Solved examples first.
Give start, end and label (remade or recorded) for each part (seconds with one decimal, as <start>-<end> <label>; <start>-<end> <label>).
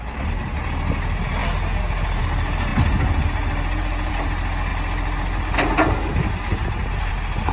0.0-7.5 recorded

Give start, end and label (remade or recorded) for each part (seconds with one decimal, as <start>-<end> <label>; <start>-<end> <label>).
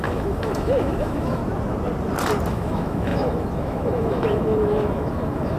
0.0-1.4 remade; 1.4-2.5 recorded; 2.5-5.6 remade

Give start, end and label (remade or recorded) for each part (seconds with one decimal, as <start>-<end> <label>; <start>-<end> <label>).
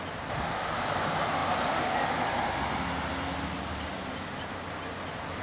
0.0-5.4 recorded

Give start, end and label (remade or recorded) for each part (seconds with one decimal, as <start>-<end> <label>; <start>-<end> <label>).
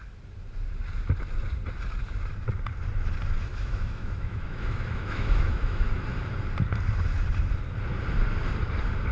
0.0-3.5 recorded; 3.5-6.2 remade; 6.2-9.1 recorded